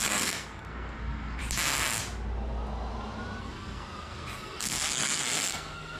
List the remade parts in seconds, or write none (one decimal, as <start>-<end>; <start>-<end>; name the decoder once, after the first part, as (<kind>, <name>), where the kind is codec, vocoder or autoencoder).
0.0-1.4 (codec, SNAC); 3.4-6.0